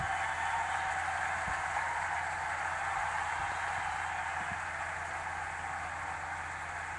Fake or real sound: real